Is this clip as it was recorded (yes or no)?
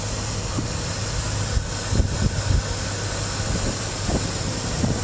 yes